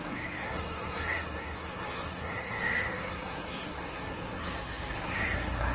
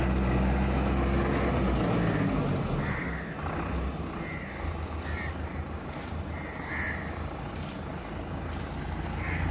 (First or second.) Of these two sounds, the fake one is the first